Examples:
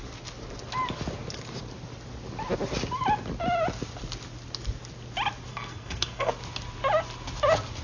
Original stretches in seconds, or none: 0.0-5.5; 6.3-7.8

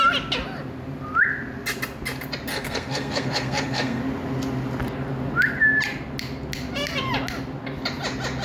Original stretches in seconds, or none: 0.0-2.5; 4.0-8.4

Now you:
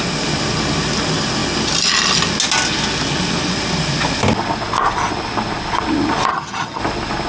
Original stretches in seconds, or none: 0.0-6.3; 6.8-7.3

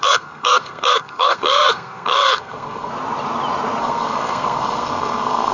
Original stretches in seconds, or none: 2.9-3.8

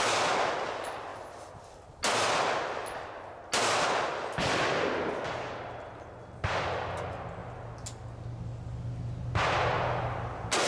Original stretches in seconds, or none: 0.0-10.7

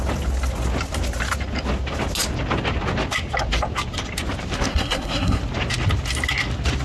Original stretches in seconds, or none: 0.0-4.7; 5.4-6.8